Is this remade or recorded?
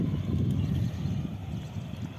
recorded